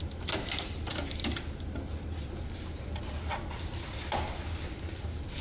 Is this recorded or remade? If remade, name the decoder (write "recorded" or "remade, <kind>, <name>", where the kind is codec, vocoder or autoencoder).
recorded